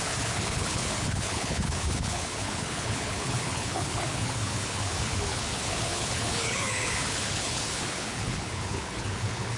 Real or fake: fake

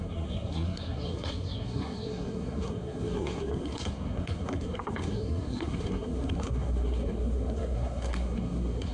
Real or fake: fake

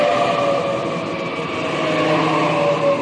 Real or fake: real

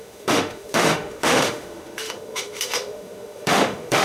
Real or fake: fake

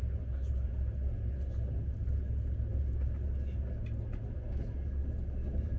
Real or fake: real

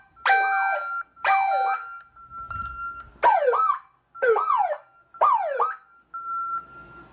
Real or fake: real